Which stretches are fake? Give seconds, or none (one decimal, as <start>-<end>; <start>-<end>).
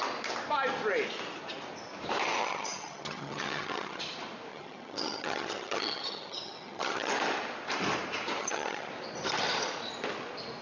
2.4-4.0; 4.5-7.1; 8.4-8.9